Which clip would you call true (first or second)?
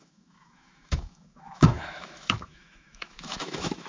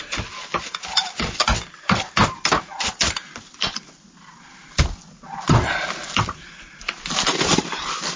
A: second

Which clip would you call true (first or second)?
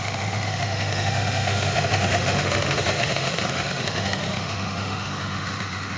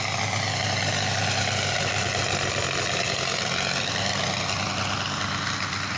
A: second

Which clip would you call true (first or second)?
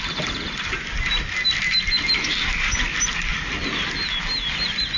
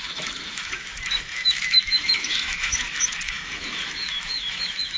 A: first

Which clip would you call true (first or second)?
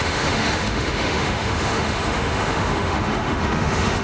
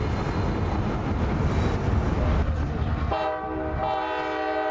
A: second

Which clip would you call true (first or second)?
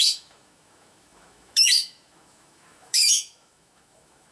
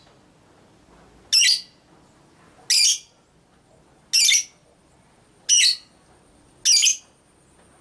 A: second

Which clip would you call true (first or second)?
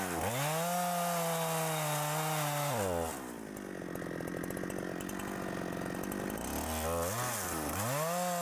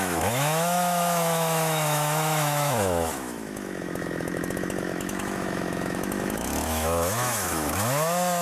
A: first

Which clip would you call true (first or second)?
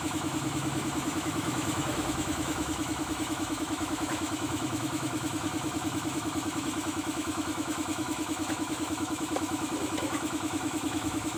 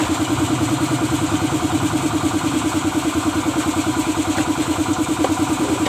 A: second